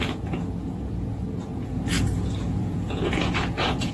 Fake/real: fake